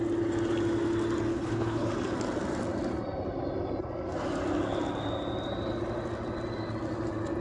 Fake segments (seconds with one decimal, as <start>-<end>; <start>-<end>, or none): 1.3-1.9